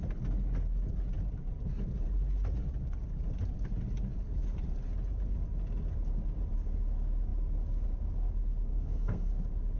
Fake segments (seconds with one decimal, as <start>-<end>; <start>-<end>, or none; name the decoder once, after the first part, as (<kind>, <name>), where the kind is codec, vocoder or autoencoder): 8.7-9.3 (codec, SNAC)